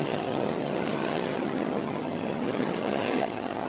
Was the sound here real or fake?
fake